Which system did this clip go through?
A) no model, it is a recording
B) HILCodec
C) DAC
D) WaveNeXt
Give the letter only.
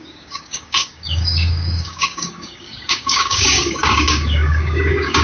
C